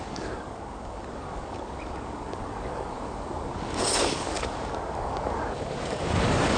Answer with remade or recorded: remade